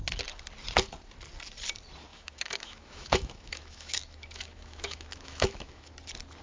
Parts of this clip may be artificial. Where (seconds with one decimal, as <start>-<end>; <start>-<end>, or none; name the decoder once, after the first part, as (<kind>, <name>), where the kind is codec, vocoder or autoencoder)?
2.1-5.9 (autoencoder, DAC-VAE)